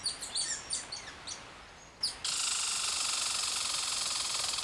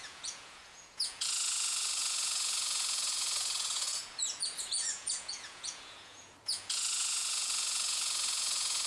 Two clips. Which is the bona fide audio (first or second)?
first